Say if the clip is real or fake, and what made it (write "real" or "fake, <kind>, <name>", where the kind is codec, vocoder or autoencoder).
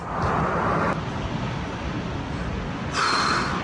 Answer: real